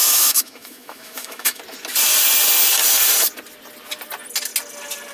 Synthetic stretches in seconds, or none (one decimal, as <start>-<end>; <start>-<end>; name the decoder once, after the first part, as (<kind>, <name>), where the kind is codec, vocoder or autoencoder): 0.0-1.6 (autoencoder, DAC-VAE)